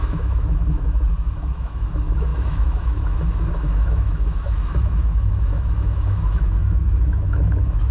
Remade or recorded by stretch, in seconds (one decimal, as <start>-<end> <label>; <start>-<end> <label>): 0.0-7.9 remade